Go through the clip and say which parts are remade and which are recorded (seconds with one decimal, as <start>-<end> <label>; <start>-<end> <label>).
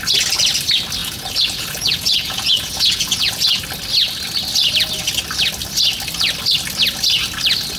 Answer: 0.0-1.0 recorded; 1.0-3.6 remade; 3.6-7.8 recorded